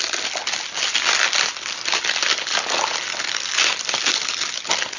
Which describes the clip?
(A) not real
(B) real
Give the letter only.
B